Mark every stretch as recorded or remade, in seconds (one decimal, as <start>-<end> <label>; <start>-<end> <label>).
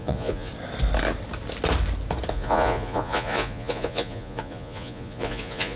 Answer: 0.0-0.5 remade; 0.5-2.3 recorded; 2.3-5.8 remade